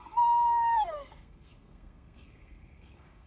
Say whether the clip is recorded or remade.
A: remade